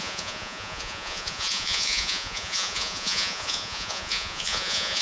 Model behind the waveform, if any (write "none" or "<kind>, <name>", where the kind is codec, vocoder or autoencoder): vocoder, Vocos